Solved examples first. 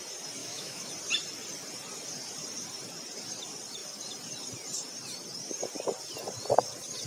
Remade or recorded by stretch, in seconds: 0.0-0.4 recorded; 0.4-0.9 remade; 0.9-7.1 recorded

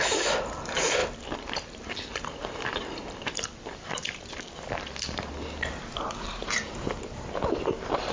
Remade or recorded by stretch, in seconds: 0.0-1.0 recorded; 1.0-4.8 remade; 4.8-8.1 recorded

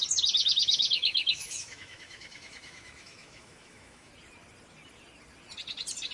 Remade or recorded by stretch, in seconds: 0.0-0.4 recorded; 0.4-4.1 remade; 4.1-6.1 recorded

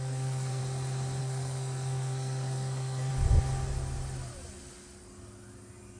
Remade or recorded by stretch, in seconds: 0.0-0.6 remade; 0.6-1.2 recorded; 1.2-3.1 remade; 3.1-6.0 recorded

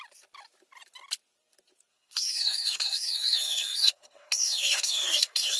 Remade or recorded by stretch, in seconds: 0.0-1.9 recorded; 1.9-5.6 remade

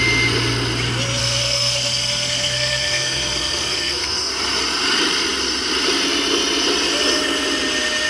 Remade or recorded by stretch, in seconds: 0.0-1.2 recorded; 1.2-4.3 remade; 4.3-8.1 recorded

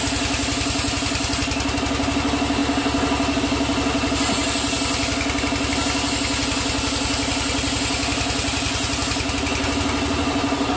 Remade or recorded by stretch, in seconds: 0.0-10.8 recorded